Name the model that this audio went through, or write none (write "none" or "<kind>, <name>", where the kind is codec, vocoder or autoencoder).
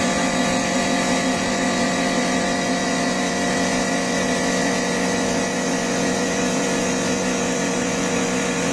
vocoder, Vocos